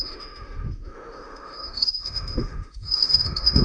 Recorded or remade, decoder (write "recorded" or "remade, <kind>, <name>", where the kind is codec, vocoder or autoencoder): remade, autoencoder, DAC-VAE